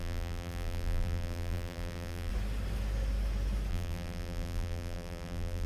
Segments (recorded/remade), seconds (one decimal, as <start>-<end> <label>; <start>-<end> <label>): 0.0-2.3 remade; 2.3-3.7 recorded; 3.7-5.7 remade